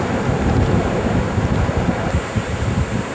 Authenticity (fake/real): real